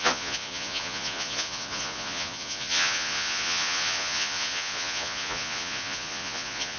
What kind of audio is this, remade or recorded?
remade